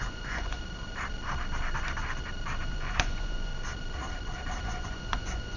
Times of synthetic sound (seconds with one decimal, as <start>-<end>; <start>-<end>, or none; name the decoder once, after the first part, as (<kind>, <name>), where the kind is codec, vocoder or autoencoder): 0.0-0.6 (vocoder, Vocos); 2.6-3.5; 4.6-5.6